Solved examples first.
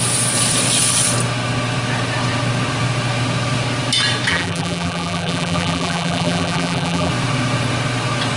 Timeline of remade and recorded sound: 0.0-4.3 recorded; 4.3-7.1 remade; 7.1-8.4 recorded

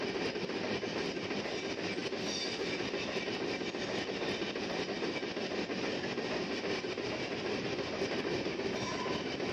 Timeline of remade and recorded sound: 0.0-9.5 recorded

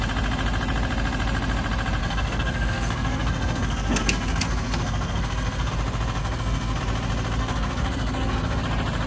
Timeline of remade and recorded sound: 0.0-2.0 recorded; 2.0-5.7 remade; 5.7-6.2 recorded; 6.2-6.8 remade; 6.8-7.4 recorded; 7.4-8.6 remade; 8.6-9.1 recorded

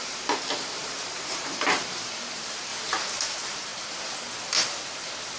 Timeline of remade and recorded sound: 0.0-2.7 remade; 2.7-3.2 recorded; 3.2-3.7 remade; 3.7-5.4 recorded

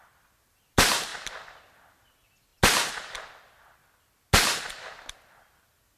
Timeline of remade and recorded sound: 0.0-6.0 recorded

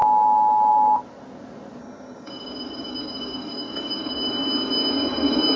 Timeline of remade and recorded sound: 0.0-1.8 recorded; 1.8-5.6 remade

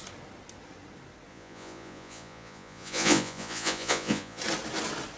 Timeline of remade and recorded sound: 0.0-1.3 recorded; 1.3-4.4 remade; 4.4-5.2 recorded